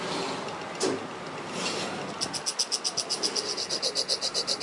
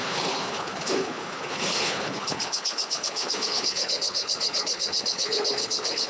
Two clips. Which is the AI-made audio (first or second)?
second